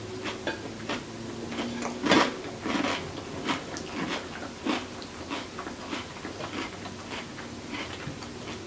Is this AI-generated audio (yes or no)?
no